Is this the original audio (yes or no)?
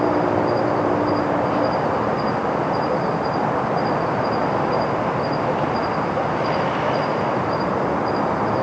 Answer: yes